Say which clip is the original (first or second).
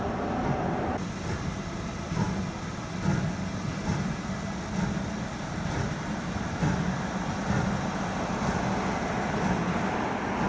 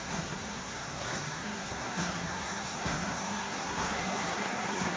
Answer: first